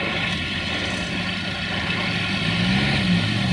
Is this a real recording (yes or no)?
yes